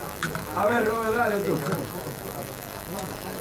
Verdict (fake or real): fake